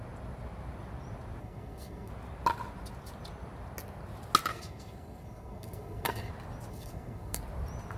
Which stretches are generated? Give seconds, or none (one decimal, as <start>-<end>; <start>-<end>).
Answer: 1.4-2.1; 4.5-6.3; 6.7-7.4